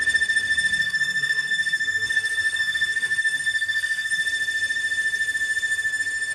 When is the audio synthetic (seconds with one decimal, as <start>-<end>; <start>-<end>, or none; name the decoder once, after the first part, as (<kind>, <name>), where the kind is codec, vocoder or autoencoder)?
0.8-4.2 (codec, SNAC)

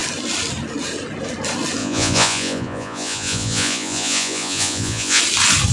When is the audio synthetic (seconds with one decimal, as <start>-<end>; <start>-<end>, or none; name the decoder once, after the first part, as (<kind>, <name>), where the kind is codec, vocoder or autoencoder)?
1.8-5.2 (vocoder, Vocos)

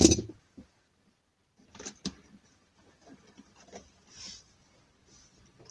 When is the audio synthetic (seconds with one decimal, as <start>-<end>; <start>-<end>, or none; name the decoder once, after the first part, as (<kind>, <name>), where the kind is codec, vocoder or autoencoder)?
none

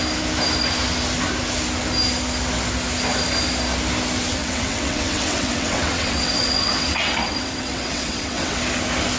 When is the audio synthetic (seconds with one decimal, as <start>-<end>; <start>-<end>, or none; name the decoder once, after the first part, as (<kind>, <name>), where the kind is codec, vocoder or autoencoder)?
4.3-8.6 (vocoder, WaveNeXt)

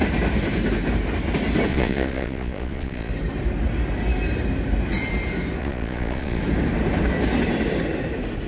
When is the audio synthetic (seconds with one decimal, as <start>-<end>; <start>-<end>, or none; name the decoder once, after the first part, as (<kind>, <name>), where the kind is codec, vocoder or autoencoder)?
1.7-3.1 (vocoder, Vocos); 5.6-6.4

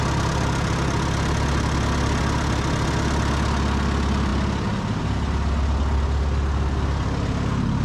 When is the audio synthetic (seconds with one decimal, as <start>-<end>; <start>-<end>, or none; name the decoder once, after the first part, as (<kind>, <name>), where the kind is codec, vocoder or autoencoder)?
none

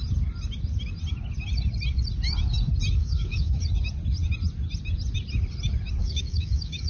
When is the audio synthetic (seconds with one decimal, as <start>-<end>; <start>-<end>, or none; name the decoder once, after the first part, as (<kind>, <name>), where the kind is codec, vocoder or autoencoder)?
3.0-3.6 (autoencoder, DAC-VAE); 6.0-6.9